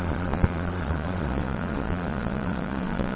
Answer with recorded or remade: remade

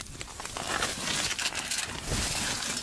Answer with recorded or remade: recorded